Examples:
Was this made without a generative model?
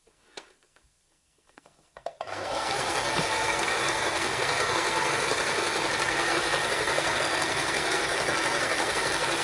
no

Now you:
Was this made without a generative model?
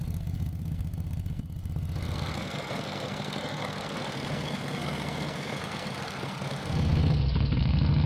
no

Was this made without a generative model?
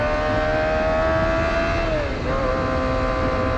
yes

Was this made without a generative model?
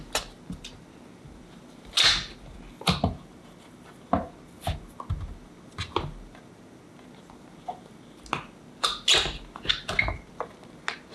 yes